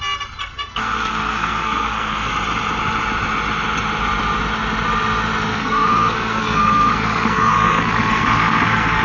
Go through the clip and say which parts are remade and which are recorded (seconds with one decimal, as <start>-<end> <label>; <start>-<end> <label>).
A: 0.0-0.4 recorded; 0.4-2.3 remade; 2.3-5.5 recorded; 5.5-9.0 remade